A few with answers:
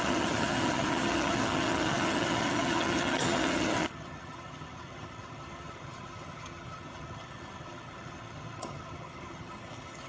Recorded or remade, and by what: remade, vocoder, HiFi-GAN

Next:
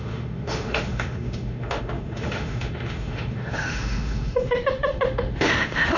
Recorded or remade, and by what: remade, autoencoder, DAC-VAE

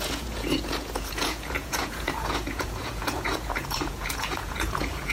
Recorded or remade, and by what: remade, vocoder, Vocos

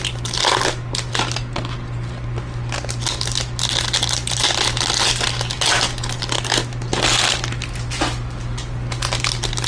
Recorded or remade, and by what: recorded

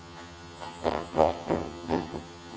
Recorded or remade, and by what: remade, vocoder, HiFi-GAN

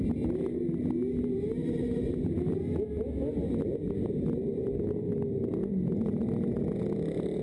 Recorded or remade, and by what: recorded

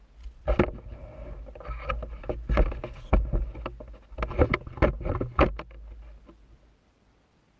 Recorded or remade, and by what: recorded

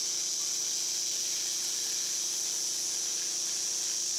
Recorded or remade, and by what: recorded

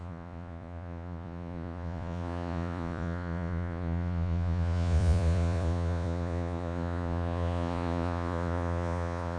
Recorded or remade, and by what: remade, vocoder, Vocos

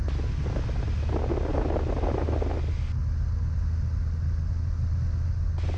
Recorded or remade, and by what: recorded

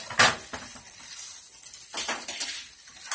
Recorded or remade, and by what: recorded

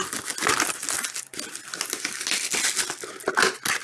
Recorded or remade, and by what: recorded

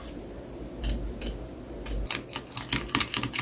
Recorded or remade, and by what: recorded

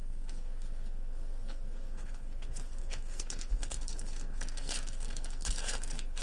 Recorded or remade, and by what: remade, codec, SNAC